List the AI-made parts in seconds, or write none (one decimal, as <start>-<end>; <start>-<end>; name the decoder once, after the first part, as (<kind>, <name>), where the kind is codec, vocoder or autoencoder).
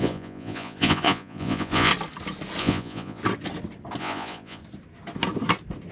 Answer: 0.0-1.9 (vocoder, Vocos); 2.6-3.2; 4.0-4.6